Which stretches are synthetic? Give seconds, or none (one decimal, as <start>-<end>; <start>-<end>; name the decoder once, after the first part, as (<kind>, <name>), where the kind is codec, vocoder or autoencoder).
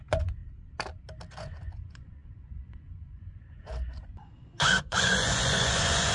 0.0-0.4 (vocoder, Vocos); 1.3-6.1